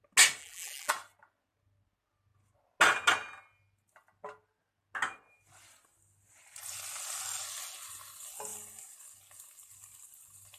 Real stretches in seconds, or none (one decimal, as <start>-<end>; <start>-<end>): 0.0-0.4; 0.9-10.6